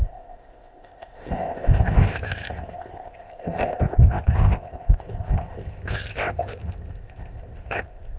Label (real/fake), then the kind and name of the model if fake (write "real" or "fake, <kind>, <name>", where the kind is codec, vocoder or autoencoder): fake, codec, ZipCodec